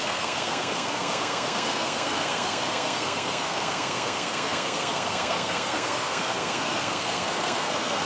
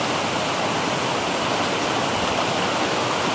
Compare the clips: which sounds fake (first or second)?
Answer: first